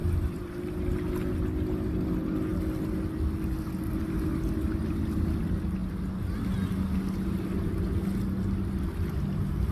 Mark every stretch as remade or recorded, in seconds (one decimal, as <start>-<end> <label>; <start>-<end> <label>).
0.0-0.6 remade; 0.6-9.7 recorded